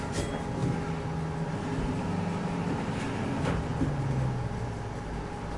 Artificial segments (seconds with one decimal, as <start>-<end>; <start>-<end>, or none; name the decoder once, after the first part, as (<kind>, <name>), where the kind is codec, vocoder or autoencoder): none